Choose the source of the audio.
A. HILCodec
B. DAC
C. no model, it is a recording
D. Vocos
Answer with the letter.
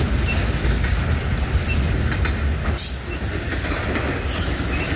C